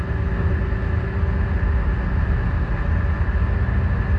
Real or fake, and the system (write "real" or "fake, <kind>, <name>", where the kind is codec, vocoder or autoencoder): real